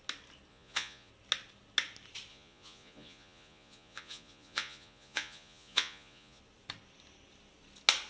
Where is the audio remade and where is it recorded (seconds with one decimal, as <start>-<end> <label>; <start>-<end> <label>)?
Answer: 0.0-0.5 recorded; 0.5-1.1 remade; 1.1-2.3 recorded; 2.3-6.4 remade; 6.4-8.1 recorded